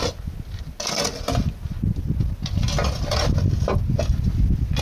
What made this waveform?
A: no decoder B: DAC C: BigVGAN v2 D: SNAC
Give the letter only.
A